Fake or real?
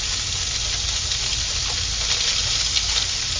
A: real